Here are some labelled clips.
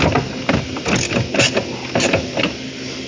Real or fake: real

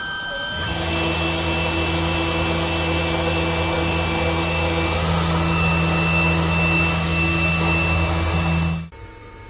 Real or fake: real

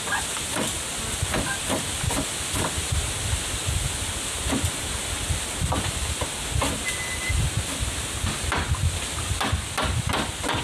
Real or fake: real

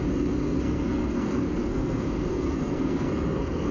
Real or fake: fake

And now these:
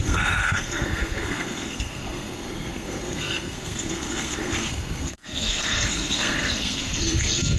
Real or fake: fake